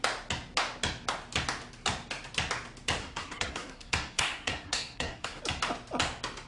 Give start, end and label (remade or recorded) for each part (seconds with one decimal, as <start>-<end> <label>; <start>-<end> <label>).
0.0-3.0 recorded; 3.0-5.4 remade; 5.4-6.5 recorded